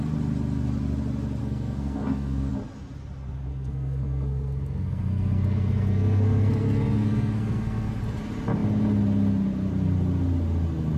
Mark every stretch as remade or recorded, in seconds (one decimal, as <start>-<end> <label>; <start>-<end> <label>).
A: 0.0-1.4 recorded; 1.4-2.5 remade; 2.5-3.5 recorded; 3.5-8.0 remade; 8.0-11.0 recorded